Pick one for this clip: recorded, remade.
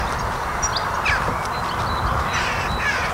recorded